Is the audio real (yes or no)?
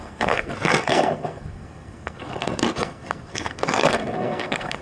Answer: no